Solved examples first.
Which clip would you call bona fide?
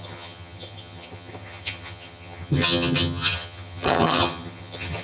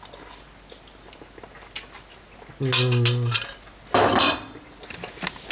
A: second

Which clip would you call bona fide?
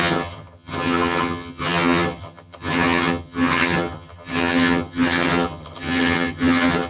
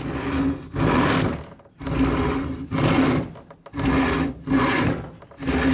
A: second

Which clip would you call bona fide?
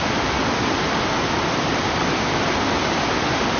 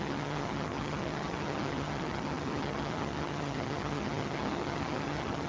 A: first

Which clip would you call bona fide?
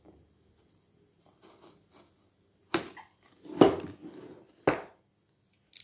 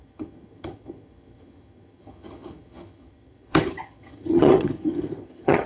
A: first